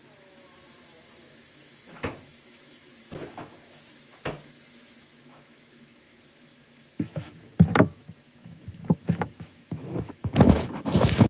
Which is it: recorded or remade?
remade